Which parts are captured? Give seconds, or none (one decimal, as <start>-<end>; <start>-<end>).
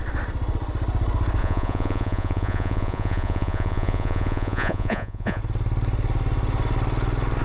0.0-1.4; 5.4-7.4